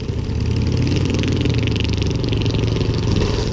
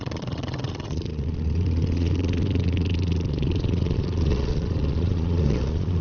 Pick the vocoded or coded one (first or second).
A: second